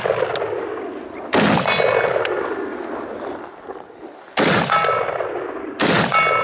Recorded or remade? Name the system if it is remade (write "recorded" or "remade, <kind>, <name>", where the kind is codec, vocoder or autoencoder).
recorded